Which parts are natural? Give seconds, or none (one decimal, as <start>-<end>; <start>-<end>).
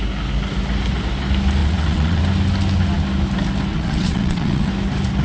0.0-1.6; 2.2-3.7; 4.7-5.2